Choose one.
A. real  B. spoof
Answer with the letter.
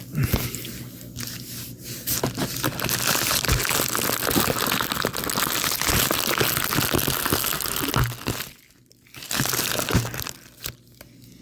A